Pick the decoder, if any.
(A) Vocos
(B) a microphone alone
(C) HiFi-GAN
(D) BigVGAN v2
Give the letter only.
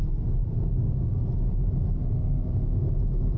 B